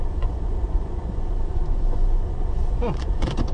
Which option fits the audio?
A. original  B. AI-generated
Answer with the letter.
B